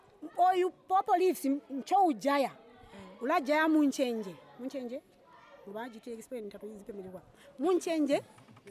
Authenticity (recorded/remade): recorded